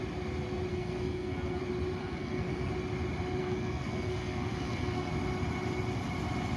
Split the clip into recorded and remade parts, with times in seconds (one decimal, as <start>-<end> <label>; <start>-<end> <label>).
0.0-0.7 recorded; 0.7-1.6 remade; 1.6-2.0 recorded; 2.0-2.7 remade; 2.7-3.4 recorded; 3.4-5.1 remade; 5.1-6.6 recorded